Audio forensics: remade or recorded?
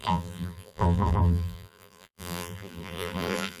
remade